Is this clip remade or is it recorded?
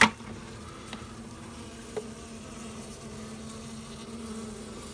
recorded